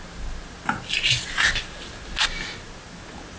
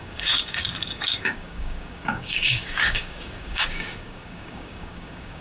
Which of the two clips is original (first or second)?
first